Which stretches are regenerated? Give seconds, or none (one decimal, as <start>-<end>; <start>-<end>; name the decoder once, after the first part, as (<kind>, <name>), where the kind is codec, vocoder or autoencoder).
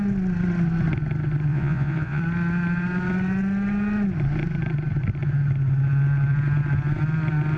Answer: 1.5-2.2 (vocoder, Vocos)